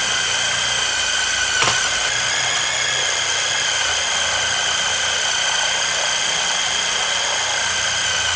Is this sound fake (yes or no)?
no